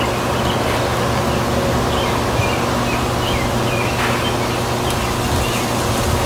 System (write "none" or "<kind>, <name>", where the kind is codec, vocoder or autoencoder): none